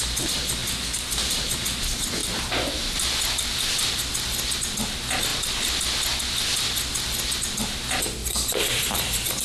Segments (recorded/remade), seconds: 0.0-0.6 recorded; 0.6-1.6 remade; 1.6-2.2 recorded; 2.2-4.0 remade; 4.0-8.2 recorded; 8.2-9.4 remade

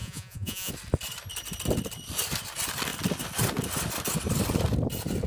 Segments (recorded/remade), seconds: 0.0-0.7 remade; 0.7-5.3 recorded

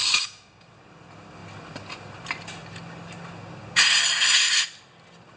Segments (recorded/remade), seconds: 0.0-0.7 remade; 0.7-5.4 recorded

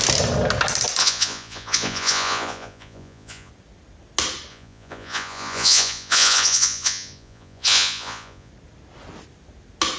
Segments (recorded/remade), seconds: 0.0-1.0 recorded; 1.0-3.5 remade; 3.5-4.5 recorded; 4.5-8.5 remade; 8.5-10.0 recorded